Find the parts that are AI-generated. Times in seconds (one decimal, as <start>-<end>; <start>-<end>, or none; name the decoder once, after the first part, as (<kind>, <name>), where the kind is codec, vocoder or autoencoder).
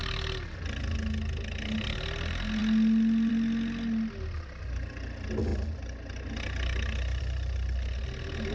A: none